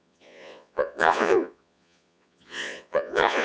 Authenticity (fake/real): fake